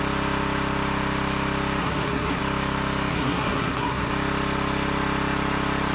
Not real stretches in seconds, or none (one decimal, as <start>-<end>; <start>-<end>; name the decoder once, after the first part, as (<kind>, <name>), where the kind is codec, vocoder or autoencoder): 1.8-2.4 (codec, SNAC); 3.1-4.1